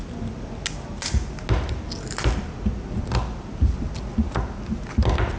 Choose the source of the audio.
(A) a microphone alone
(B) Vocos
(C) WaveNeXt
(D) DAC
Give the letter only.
A